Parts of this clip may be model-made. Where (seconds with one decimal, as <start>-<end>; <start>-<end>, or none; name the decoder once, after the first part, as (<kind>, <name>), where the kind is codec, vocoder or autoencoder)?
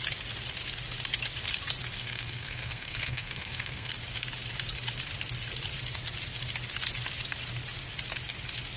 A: 2.0-3.9 (codec, SNAC)